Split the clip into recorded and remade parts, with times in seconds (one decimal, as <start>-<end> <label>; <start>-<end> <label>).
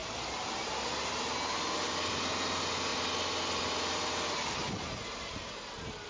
0.0-0.7 remade; 0.7-6.1 recorded